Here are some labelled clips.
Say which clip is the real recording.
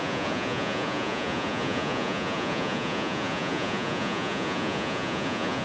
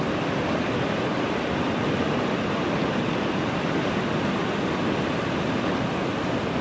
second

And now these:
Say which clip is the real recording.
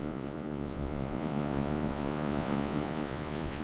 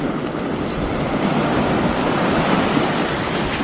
second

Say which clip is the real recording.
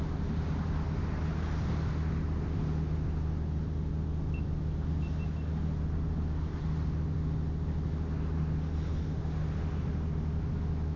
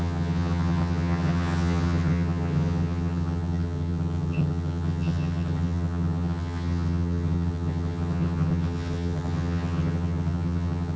first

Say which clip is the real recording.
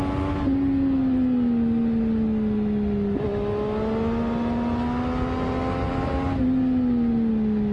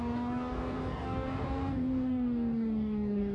first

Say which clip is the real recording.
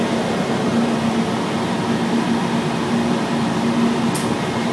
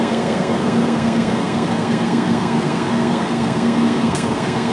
first